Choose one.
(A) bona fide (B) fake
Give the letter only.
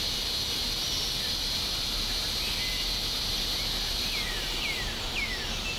A